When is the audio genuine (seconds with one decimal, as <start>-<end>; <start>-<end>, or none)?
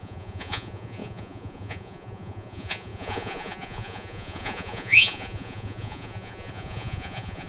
none